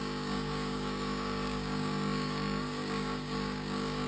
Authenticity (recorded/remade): remade